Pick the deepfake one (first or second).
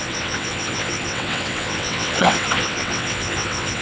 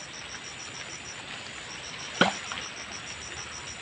first